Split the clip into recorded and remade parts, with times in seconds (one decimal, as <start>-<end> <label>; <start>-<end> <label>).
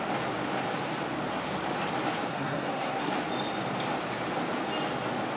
0.0-2.3 recorded; 2.3-3.1 remade; 3.1-5.4 recorded